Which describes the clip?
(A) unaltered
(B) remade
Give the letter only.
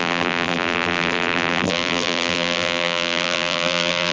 B